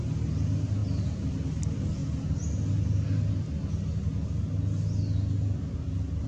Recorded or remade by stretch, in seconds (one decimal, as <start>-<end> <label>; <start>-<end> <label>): 0.0-0.8 recorded; 0.8-1.6 remade; 1.6-6.3 recorded